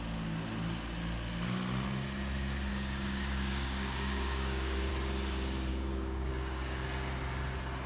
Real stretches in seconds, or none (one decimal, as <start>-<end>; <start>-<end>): 0.0-2.7; 4.9-5.7; 6.3-7.9